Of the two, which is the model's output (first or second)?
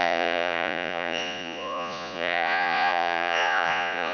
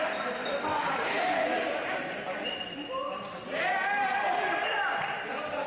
first